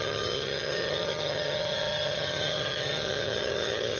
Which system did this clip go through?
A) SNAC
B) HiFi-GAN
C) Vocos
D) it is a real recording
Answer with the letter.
B